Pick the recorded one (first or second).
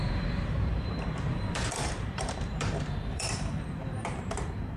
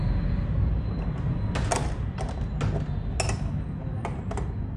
second